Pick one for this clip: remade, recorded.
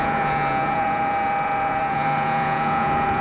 remade